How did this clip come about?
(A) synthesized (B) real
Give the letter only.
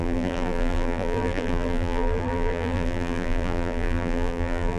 A